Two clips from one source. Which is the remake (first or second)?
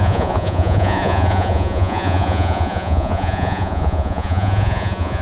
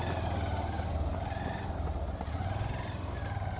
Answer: first